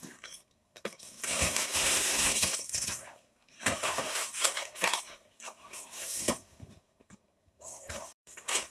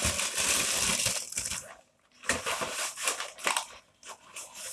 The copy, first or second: first